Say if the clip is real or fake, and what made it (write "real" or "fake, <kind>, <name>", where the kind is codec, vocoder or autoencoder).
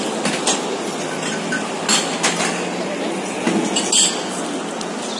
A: real